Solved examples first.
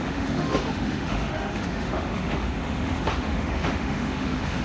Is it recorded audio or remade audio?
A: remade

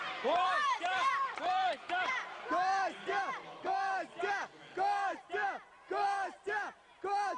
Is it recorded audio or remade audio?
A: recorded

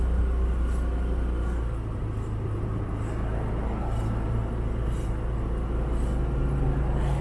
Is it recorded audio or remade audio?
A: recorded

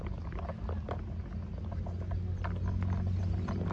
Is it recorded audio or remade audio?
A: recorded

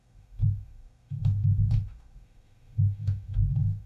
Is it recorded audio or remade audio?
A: remade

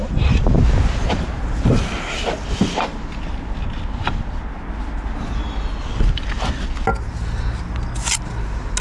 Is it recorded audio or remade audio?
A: recorded